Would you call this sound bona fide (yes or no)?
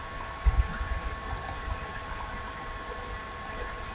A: yes